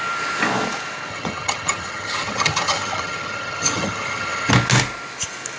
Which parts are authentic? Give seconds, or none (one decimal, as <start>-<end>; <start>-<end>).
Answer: 0.0-1.1; 4.5-5.6